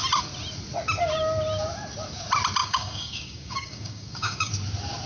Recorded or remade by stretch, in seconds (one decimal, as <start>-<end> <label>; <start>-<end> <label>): 0.0-2.6 recorded; 2.6-4.5 remade; 4.5-5.1 recorded